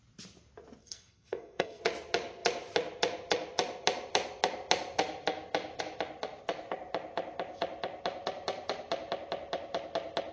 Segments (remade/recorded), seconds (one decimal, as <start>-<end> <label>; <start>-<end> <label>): 0.0-0.8 recorded; 0.8-1.8 remade; 1.8-10.3 recorded